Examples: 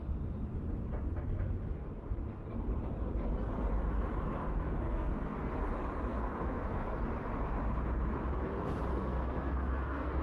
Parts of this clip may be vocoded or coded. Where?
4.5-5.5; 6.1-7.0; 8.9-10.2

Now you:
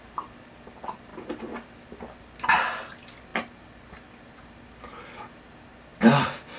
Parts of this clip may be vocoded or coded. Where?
none

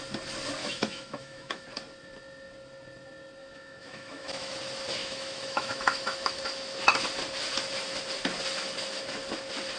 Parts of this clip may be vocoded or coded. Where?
0.6-1.6; 3.4-4.6; 5.0-6.4

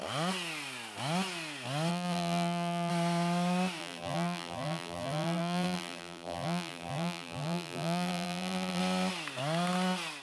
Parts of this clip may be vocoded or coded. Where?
1.9-2.9; 3.8-8.8

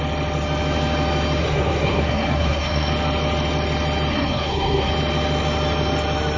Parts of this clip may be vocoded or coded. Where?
1.4-2.9; 4.1-4.9

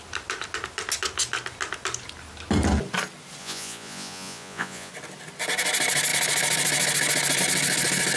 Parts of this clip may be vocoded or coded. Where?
3.4-4.9